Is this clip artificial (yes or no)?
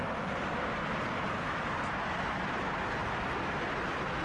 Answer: no